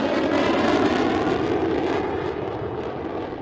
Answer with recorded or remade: recorded